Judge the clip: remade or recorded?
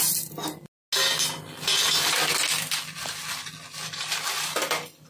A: recorded